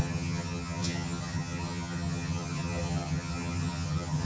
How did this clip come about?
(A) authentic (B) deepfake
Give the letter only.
B